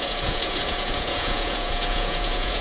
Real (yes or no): no